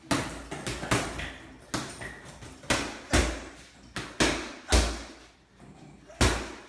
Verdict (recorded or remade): recorded